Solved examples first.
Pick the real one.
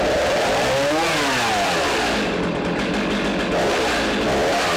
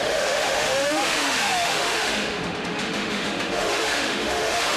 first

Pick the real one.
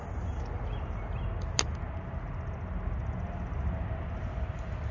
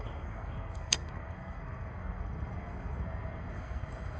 first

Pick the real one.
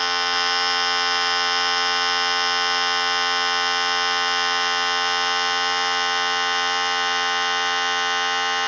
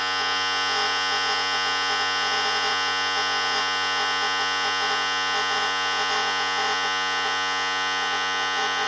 first